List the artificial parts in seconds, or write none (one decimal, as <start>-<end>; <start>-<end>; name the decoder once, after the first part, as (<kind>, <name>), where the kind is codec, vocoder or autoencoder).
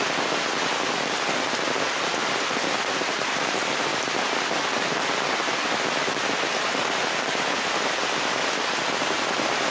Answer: 2.2-3.0 (vocoder, BigVGAN v2)